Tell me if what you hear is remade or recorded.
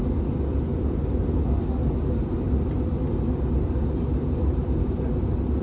recorded